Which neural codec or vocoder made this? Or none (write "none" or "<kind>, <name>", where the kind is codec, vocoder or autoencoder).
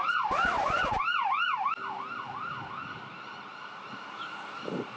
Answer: none